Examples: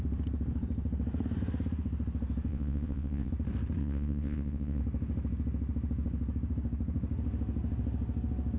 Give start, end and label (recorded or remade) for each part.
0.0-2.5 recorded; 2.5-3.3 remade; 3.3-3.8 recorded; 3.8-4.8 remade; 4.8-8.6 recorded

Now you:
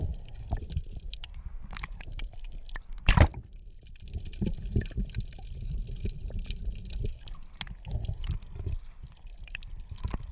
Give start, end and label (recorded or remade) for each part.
0.0-1.2 remade; 1.2-2.0 recorded; 2.0-3.3 remade; 3.3-3.8 recorded; 3.8-6.6 remade; 6.6-7.9 recorded; 7.9-10.3 remade

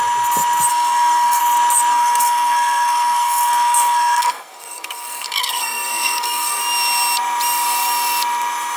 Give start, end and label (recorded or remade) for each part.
0.0-0.7 recorded; 0.7-1.4 remade; 1.4-1.9 recorded; 1.9-6.6 remade; 6.6-8.8 recorded

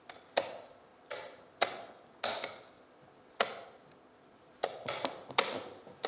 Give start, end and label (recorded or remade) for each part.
0.0-6.1 recorded

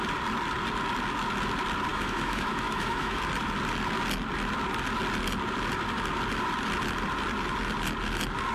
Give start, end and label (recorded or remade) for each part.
0.0-1.9 recorded; 1.9-3.2 remade; 3.2-8.5 recorded